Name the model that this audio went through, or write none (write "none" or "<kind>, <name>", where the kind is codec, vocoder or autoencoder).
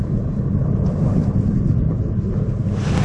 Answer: none